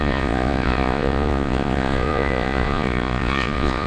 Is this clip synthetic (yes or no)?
yes